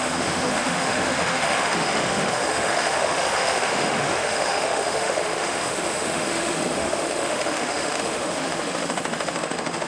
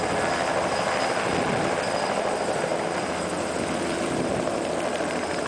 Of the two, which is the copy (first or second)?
first